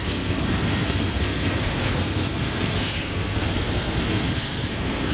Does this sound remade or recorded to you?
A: remade